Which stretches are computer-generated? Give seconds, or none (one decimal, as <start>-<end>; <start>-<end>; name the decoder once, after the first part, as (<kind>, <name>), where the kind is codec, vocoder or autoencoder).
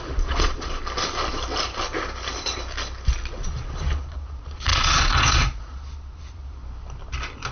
0.0-0.8 (vocoder, Vocos); 3.5-6.6